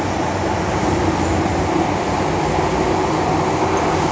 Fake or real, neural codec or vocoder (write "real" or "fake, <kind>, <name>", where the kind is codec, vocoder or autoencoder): real